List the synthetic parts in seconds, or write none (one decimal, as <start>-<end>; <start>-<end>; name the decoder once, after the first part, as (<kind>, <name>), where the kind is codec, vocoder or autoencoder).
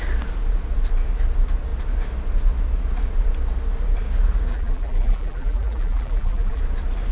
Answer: 4.5-6.6 (vocoder, BigVGAN v2)